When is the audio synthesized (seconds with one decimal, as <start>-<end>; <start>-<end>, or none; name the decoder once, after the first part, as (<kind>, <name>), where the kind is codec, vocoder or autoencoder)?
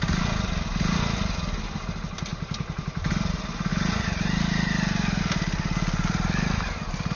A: 2.3-3.3 (vocoder, BigVGAN v2); 3.7-5.2